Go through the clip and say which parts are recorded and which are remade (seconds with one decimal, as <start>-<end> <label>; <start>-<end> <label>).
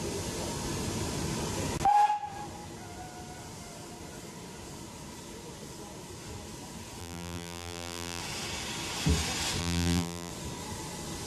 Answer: 0.0-7.0 recorded; 7.0-8.2 remade; 8.2-9.6 recorded; 9.6-10.3 remade; 10.3-11.3 recorded